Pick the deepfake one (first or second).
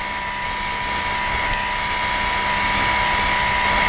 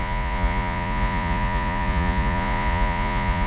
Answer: second